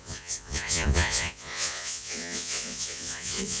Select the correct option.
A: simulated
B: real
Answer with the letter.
A